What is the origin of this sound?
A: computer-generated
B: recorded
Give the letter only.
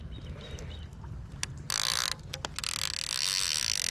B